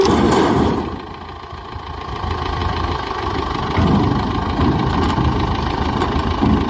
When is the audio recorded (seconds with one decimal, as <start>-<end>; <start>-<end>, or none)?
0.0-6.7